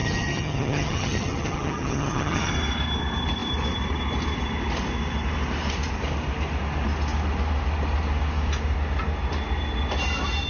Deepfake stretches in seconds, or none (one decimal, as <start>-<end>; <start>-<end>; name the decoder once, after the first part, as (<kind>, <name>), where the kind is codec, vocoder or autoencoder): 0.0-2.5 (vocoder, HiFi-GAN)